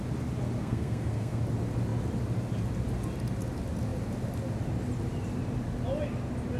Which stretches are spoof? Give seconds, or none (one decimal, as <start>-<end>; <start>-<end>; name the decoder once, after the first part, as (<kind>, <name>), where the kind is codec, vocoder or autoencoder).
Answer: 0.6-1.4 (codec, SNAC)